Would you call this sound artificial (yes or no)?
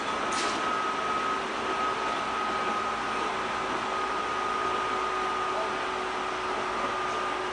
no